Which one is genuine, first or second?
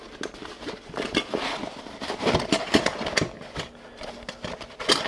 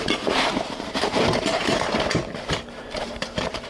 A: first